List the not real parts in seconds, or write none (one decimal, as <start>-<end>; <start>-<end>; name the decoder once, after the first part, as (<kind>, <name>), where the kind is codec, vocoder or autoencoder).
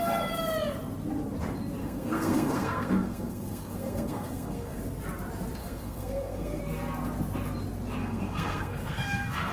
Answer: 1.8-4.8 (codec, SNAC); 5.6-6.6; 8.0-9.5